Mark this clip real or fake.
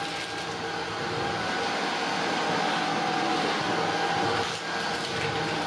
real